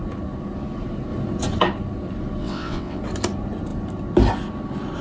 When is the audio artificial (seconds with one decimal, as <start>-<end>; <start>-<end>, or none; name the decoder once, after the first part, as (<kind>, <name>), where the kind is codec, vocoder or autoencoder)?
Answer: 2.4-3.0 (vocoder, WaveNeXt)